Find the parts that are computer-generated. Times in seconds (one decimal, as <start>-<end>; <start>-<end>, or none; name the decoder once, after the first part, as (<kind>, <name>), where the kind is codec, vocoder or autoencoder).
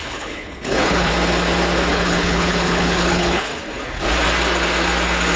0.0-1.1 (codec, HILCodec); 1.9-3.5